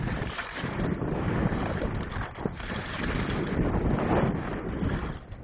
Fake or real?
real